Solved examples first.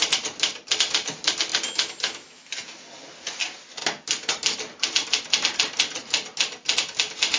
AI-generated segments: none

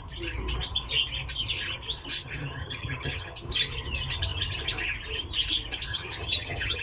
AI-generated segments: 2.2-3.5 (vocoder, HiFi-GAN); 5.9-6.8

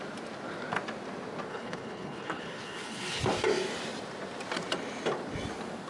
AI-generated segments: 1.5-3.2 (codec, HILCodec)

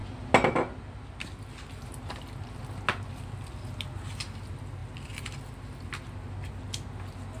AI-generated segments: 4.8-5.5 (vocoder, BigVGAN v2)

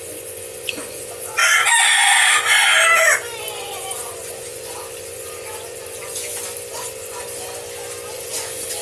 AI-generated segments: 0.0-1.4 (vocoder, Vocos); 3.6-6.2; 6.7-7.2; 8.1-8.8

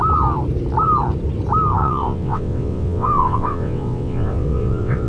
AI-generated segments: 1.8-5.1 (vocoder, WaveNeXt)

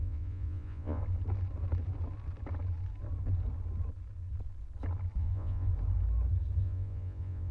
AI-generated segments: 0.0-1.0 (vocoder, Vocos); 5.2-5.7; 6.6-7.5

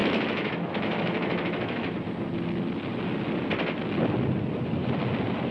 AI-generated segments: 0.0-1.9 (autoencoder, DAC-VAE)